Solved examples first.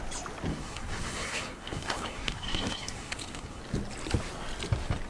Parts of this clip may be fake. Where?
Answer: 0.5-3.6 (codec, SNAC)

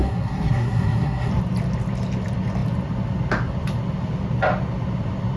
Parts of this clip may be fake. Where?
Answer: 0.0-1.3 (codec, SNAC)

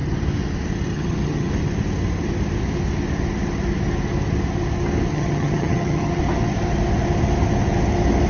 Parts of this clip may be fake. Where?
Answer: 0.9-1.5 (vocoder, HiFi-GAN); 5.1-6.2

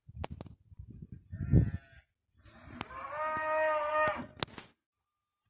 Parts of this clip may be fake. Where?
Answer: none